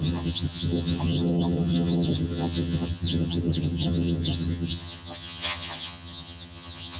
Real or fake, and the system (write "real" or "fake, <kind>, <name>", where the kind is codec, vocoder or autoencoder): fake, vocoder, HiFi-GAN